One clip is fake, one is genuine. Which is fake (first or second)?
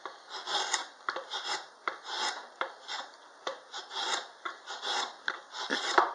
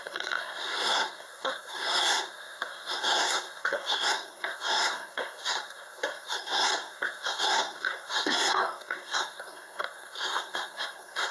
second